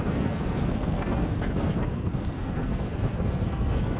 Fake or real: fake